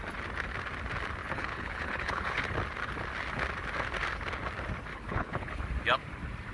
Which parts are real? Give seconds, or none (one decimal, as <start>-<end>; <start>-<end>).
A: 0.0-1.2; 2.4-4.9; 5.6-6.5